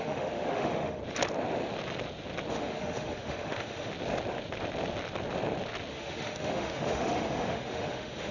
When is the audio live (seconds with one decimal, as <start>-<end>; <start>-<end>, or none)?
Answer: 1.0-2.5; 3.9-5.9